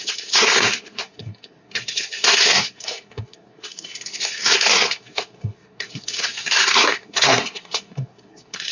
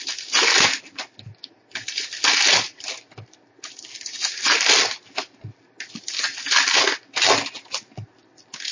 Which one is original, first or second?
second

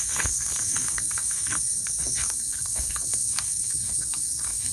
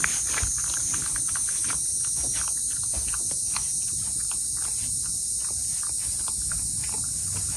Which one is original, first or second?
second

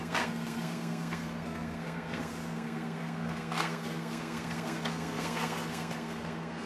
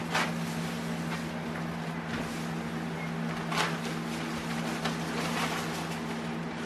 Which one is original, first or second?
second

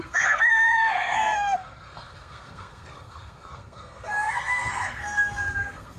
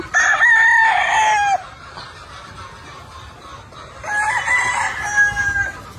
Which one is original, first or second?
second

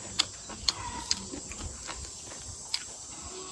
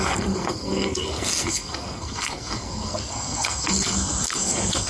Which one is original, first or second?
first